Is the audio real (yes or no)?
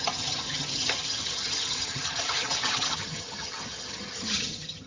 no